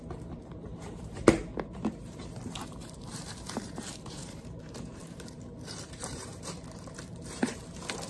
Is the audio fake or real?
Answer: fake